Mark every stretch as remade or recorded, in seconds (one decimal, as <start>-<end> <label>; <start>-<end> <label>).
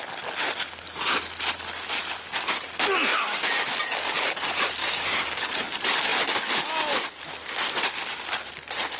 0.0-3.1 recorded; 3.1-3.7 remade; 3.7-4.8 recorded; 4.8-5.5 remade; 5.5-9.0 recorded